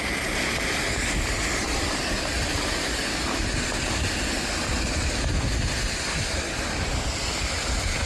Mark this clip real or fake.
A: real